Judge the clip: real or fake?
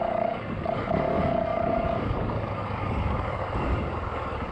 fake